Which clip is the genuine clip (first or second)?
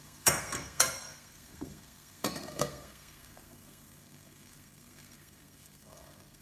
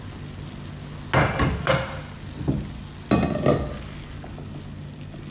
second